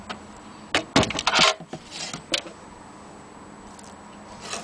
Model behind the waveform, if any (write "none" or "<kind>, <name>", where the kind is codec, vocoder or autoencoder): none